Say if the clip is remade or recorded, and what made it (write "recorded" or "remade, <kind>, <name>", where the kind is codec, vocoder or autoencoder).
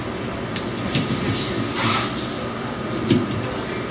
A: recorded